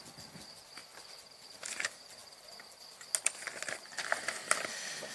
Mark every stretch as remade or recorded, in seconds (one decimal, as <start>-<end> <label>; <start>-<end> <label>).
0.0-5.1 recorded